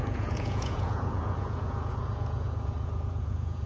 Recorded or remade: remade